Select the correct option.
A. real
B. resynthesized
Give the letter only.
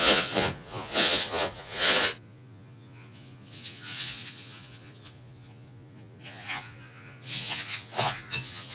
B